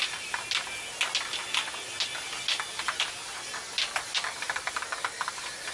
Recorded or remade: recorded